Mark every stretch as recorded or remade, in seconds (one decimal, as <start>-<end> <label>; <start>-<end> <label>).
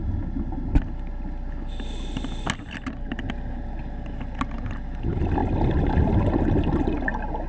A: 0.0-7.5 recorded